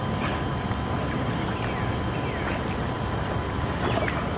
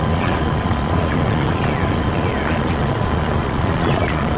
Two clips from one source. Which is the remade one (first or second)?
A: second